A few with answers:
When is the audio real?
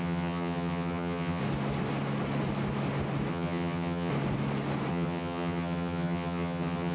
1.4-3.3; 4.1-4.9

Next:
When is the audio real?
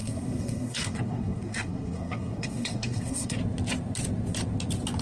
3.4-5.0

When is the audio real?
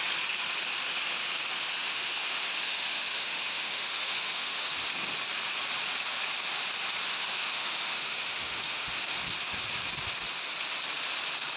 0.0-1.8; 4.7-7.1; 9.0-11.6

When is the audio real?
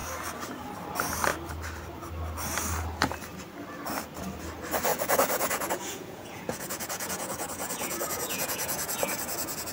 0.0-4.9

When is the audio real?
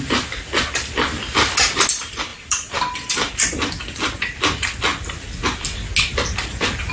0.0-2.3; 3.4-6.9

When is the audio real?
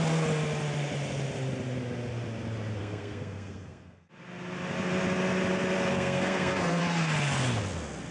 0.0-2.8; 4.1-5.9; 6.8-8.1